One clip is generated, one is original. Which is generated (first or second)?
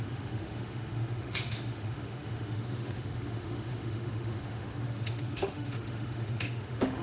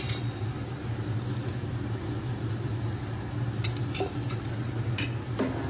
first